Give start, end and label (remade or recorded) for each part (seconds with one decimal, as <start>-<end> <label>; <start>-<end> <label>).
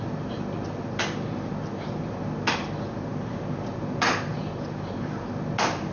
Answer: 0.0-5.9 recorded